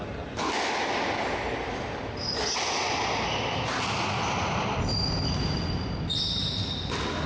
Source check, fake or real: real